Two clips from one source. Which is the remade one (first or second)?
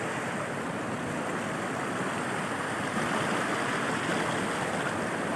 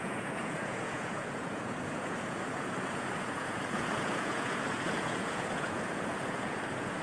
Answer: second